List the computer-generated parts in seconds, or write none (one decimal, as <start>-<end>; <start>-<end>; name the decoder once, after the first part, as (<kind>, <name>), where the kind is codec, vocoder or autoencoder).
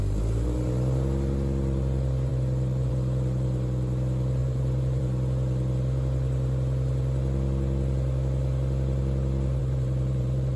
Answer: 2.3-2.9 (vocoder, BigVGAN v2); 4.4-5.0; 9.6-10.6